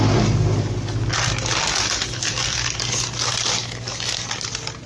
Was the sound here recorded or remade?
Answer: recorded